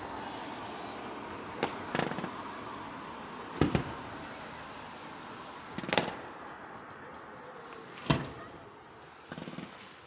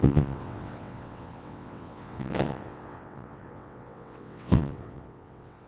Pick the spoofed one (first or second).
second